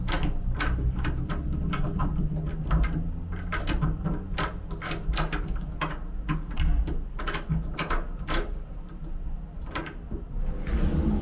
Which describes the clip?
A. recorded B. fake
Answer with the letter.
A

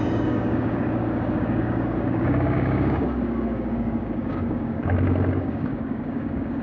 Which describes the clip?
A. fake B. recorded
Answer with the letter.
A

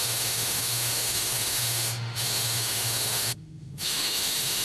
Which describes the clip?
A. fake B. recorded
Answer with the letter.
A